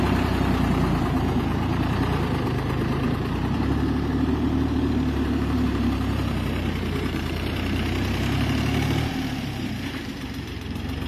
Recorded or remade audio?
remade